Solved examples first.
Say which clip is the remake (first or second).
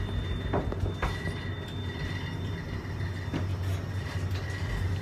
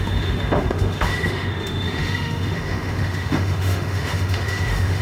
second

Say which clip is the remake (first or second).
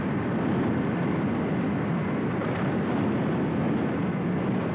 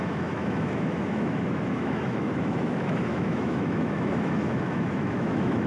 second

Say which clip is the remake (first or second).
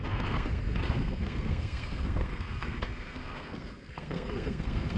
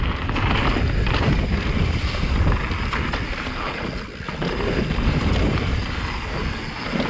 first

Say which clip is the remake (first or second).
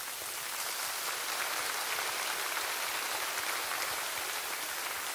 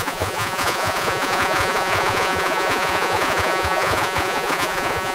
second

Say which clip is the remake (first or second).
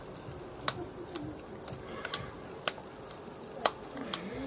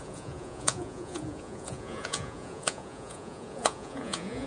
second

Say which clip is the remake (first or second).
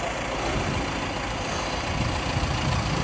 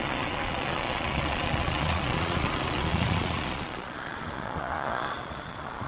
second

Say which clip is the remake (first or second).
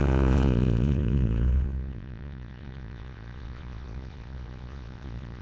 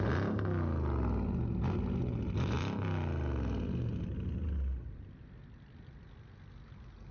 first